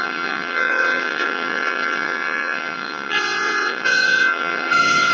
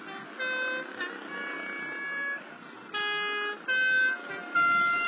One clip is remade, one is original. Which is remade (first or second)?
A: first